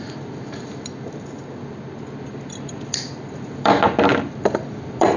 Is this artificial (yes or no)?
no